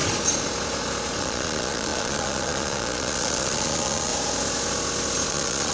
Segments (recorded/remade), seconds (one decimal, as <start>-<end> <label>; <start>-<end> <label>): 0.0-1.2 recorded; 1.2-4.1 remade; 4.1-5.3 recorded; 5.3-5.7 remade